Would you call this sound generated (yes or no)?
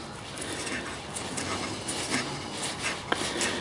no